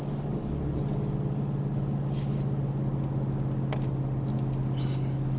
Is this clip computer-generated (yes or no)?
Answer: no